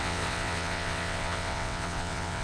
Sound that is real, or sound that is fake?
fake